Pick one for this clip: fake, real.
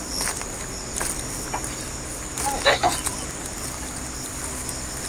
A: real